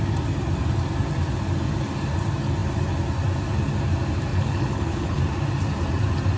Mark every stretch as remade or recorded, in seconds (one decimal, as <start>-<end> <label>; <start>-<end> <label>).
0.0-4.3 recorded; 4.3-5.2 remade; 5.2-6.4 recorded